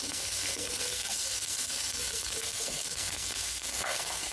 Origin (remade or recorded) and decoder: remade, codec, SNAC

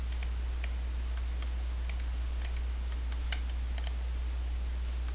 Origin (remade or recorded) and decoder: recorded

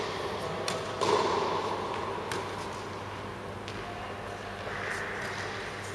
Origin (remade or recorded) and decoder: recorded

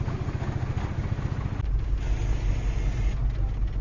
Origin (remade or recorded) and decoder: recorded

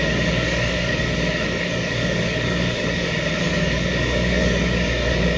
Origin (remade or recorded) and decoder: remade, codec, DAC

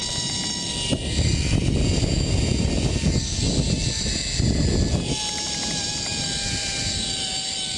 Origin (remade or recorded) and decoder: recorded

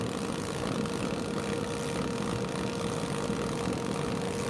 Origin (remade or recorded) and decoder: recorded